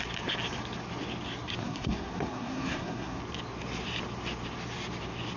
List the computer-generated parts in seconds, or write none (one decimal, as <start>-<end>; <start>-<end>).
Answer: 1.6-3.2